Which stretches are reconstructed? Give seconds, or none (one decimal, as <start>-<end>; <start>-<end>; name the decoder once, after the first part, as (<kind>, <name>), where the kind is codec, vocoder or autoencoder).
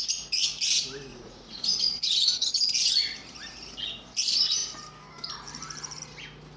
1.1-2.5 (vocoder, Vocos)